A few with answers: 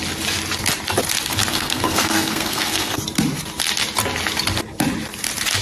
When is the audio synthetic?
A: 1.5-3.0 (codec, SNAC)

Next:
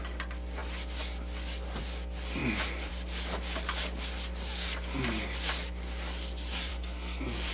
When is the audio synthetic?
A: 6.7-7.5 (codec, SNAC)

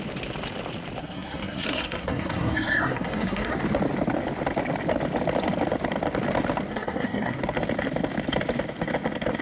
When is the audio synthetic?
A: 1.0-3.5 (codec, SNAC); 6.7-7.4